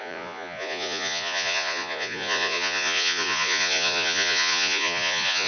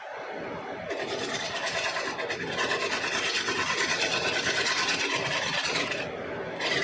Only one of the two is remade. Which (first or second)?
first